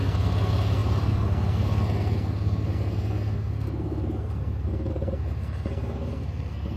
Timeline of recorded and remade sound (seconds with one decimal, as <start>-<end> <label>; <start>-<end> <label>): 0.0-6.8 remade